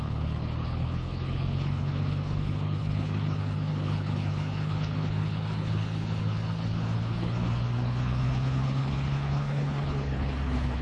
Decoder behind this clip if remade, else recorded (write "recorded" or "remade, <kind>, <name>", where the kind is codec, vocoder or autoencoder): remade, codec, HILCodec